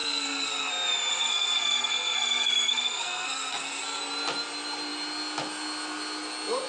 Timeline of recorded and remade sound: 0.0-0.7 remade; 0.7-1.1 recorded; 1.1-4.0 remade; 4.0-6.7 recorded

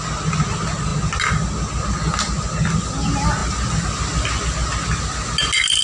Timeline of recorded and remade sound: 0.0-5.8 recorded